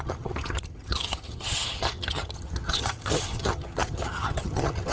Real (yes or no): no